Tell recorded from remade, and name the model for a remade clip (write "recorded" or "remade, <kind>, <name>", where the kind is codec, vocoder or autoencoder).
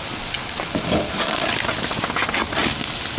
recorded